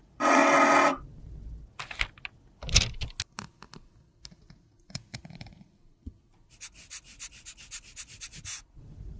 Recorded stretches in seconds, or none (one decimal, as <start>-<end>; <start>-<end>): 0.4-4.4; 5.7-8.7